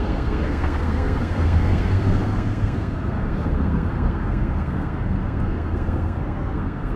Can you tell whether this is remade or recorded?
remade